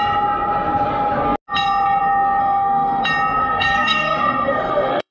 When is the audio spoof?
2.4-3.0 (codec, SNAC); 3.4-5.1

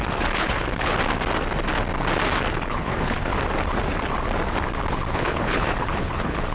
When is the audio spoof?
0.0-0.9 (codec, HILCodec); 2.5-3.3; 5.1-6.5

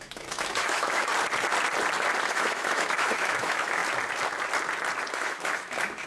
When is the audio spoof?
0.0-1.1 (autoencoder, DAC-VAE); 2.3-3.8; 5.1-6.1